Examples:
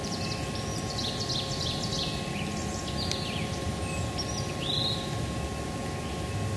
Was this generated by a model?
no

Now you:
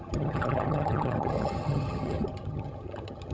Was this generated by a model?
yes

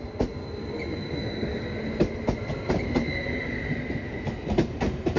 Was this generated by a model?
no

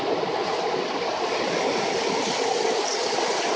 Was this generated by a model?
no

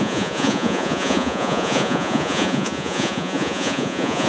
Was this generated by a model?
yes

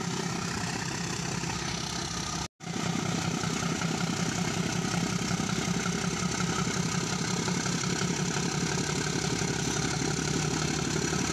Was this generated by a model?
no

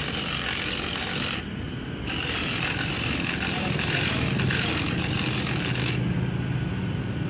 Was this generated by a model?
no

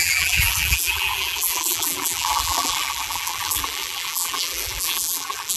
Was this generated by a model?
yes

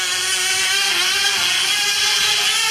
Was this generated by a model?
no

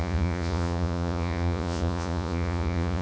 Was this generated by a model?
yes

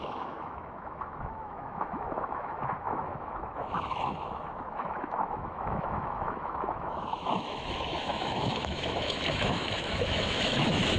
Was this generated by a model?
yes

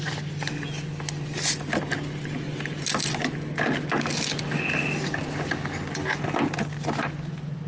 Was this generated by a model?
no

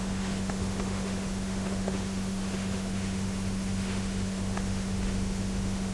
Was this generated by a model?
yes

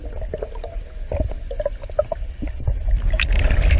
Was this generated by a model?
yes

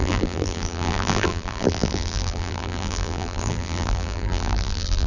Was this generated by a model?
yes